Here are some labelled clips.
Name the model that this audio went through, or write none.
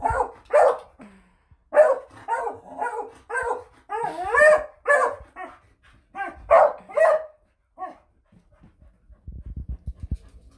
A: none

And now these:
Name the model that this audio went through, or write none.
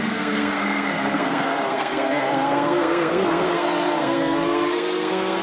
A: codec, SNAC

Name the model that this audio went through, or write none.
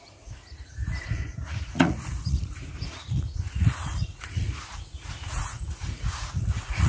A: vocoder, Vocos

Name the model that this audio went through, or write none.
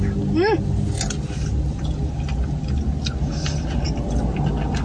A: none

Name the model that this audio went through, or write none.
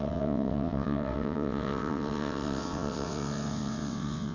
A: vocoder, WaveNeXt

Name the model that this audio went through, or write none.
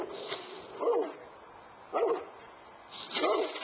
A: none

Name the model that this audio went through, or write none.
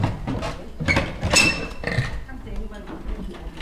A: none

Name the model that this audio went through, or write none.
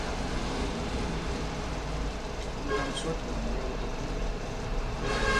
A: vocoder, BigVGAN v2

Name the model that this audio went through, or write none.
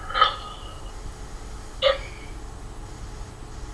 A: none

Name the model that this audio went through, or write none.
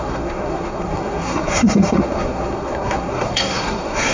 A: codec, SNAC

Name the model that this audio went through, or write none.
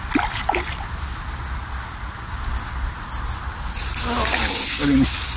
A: none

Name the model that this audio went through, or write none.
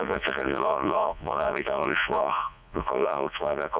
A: vocoder, Vocos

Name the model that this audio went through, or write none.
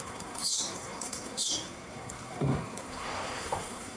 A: codec, SNAC